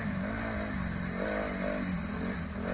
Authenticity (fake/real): real